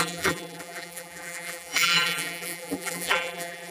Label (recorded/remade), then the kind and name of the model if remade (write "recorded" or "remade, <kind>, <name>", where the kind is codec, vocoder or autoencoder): remade, vocoder, BigVGAN v2